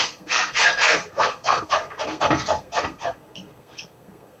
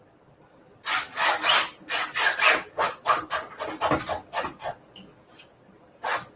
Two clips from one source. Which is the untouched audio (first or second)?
second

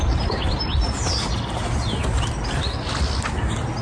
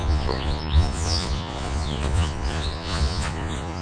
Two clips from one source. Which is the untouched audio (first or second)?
first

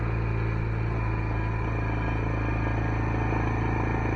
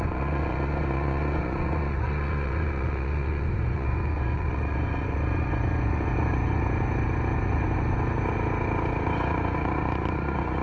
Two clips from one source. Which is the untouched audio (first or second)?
first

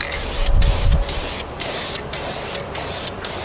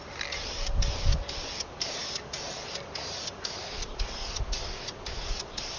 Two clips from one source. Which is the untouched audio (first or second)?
first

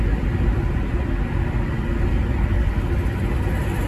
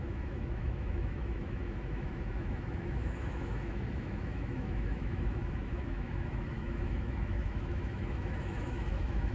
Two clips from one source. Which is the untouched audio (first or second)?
first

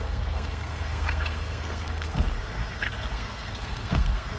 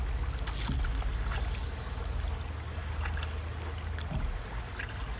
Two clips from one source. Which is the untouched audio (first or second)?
second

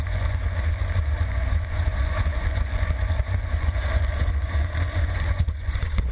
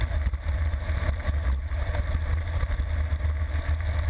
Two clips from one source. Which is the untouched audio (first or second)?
second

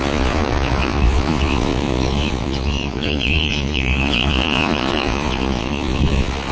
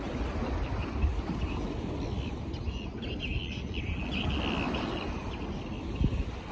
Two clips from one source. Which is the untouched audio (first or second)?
second